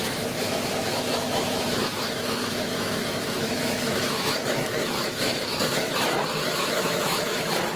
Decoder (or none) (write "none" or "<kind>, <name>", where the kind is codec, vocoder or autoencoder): autoencoder, DAC-VAE